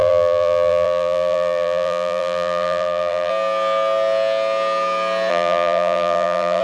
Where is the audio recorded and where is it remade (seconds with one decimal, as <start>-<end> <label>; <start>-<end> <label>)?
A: 0.0-3.3 remade; 3.3-5.3 recorded; 5.3-6.6 remade